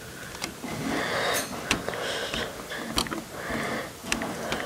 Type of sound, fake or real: real